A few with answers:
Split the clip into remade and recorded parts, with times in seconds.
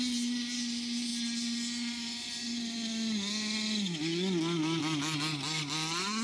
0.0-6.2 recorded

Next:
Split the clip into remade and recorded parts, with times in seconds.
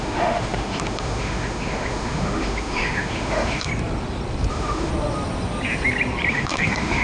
0.0-3.7 remade; 3.7-4.5 recorded; 4.5-4.9 remade; 4.9-6.3 recorded; 6.3-7.0 remade